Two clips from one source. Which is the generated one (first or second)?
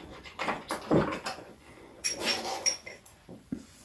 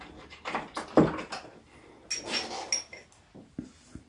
first